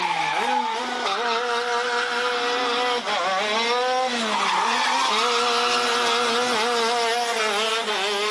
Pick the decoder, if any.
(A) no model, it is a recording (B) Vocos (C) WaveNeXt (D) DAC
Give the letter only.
A